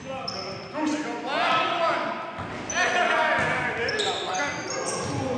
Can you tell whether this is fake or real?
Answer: real